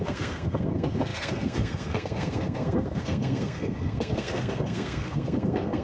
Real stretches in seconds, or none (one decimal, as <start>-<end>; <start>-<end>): none